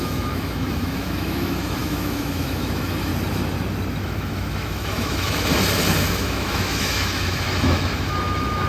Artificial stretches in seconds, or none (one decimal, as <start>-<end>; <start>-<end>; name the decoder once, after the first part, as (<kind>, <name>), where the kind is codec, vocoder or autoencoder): 0.0-3.1 (autoencoder, DAC-VAE); 4.0-5.5; 6.1-8.7